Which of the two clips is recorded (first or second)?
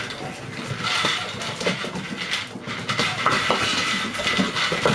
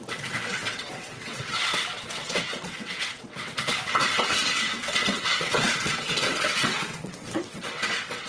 first